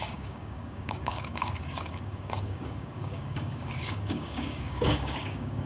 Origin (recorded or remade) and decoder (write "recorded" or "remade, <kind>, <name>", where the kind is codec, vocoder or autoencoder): remade, codec, DAC